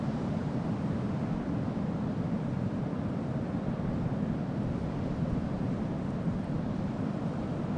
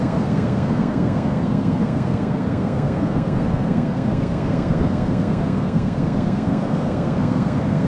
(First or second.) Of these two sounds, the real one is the first